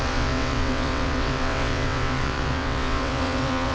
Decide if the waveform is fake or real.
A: fake